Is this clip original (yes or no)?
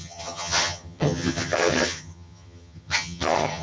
no